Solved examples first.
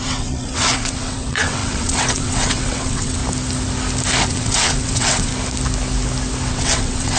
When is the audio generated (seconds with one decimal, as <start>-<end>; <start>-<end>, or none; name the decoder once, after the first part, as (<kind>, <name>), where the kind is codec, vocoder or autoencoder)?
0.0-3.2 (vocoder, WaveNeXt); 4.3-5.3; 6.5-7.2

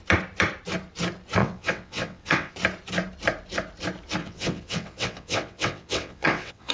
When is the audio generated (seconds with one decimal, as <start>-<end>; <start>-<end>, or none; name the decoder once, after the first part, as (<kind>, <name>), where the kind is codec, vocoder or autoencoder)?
1.4-2.5 (vocoder, WaveNeXt); 4.2-6.7

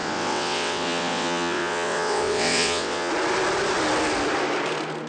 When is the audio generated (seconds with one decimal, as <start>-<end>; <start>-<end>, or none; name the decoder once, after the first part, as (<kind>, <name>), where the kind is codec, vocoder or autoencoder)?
0.0-3.1 (vocoder, WaveNeXt)

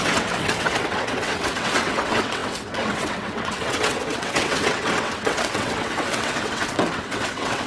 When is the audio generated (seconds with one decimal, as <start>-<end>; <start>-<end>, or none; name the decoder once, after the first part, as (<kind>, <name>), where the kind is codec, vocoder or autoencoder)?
0.0-7.7 (vocoder, WaveNeXt)

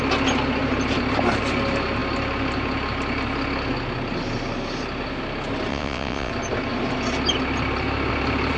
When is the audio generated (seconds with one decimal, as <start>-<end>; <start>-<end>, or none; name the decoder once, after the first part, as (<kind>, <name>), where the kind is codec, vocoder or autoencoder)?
5.7-6.3 (vocoder, WaveNeXt)